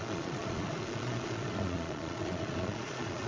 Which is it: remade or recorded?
remade